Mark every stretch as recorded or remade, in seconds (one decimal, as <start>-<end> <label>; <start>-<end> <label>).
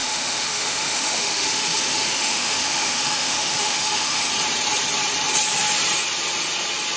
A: 0.0-4.2 remade; 4.2-7.0 recorded